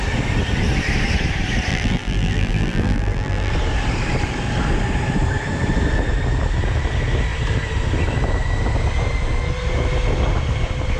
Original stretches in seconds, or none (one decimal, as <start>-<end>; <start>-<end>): 0.0-1.7; 3.5-11.0